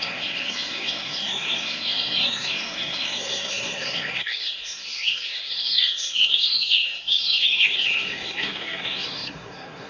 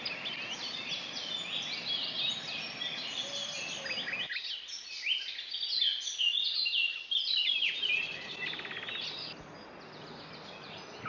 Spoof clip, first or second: first